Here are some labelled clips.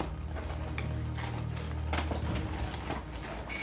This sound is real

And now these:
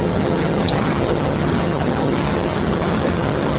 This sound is fake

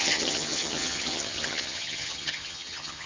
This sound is fake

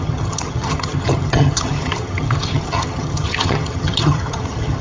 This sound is fake